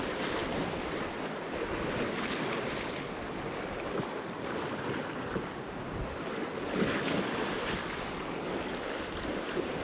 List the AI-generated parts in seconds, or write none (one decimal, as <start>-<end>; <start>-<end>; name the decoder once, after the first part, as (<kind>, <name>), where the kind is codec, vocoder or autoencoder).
none